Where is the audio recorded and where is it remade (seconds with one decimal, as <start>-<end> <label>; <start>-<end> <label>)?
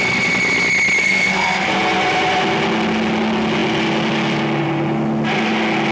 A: 0.0-1.0 recorded; 1.0-1.7 remade; 1.7-5.9 recorded